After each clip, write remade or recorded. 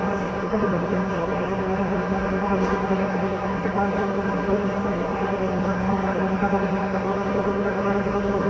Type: remade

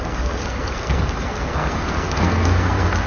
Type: remade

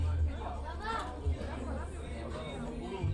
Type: recorded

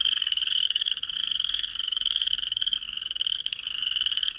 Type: remade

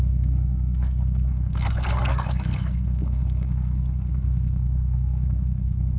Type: remade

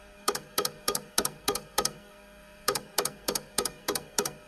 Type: remade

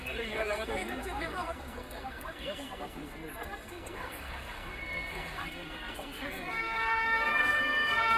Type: remade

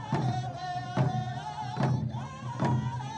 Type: recorded